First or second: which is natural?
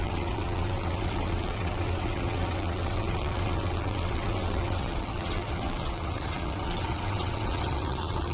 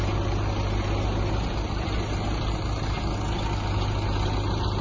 second